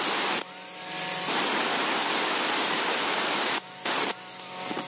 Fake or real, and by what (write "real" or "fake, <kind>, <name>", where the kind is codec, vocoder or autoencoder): real